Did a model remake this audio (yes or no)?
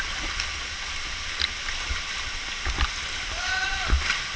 no